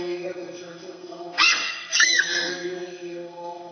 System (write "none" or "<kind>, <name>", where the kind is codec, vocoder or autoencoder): codec, SNAC